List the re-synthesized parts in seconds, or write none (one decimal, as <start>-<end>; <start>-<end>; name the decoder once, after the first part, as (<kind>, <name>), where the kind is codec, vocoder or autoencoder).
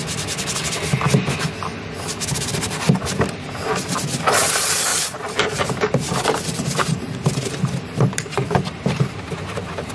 4.9-9.9 (vocoder, BigVGAN v2)